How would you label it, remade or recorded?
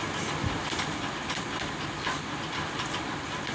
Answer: recorded